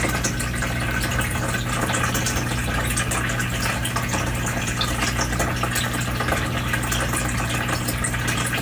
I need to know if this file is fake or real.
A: real